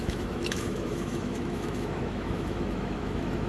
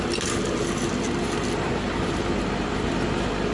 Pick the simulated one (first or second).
first